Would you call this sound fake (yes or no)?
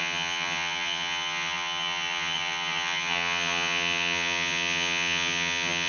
yes